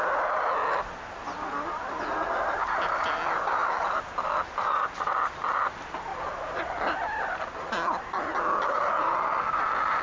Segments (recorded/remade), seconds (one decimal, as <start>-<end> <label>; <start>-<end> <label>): 0.0-6.1 recorded; 6.1-6.9 remade; 6.9-10.0 recorded